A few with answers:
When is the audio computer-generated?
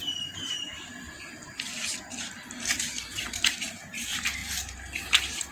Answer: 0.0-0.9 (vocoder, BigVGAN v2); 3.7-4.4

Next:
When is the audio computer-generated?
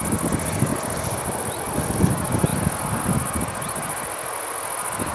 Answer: 0.7-1.5 (vocoder, BigVGAN v2)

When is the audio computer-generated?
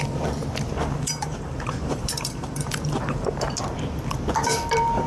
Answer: 1.0-3.5 (vocoder, BigVGAN v2)